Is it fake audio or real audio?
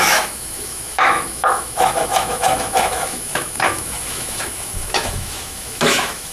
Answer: fake